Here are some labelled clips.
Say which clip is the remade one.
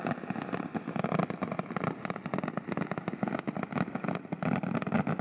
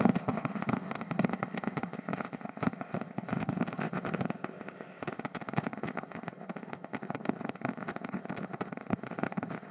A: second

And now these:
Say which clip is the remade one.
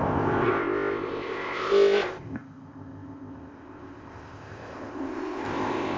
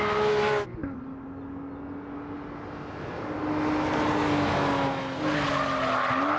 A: first